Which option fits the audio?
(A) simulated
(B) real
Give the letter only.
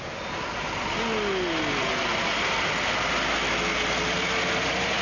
B